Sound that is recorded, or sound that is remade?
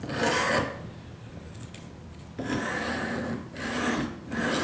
recorded